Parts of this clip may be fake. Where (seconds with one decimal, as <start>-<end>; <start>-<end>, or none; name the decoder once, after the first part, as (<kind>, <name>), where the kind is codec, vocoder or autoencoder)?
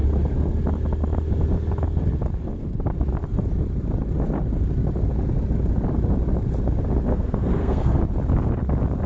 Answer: 7.1-8.0 (codec, SNAC)